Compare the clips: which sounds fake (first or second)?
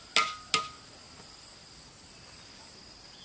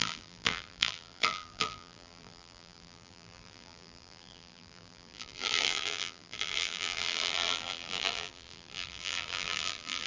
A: second